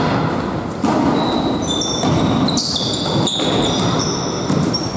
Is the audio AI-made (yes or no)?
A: no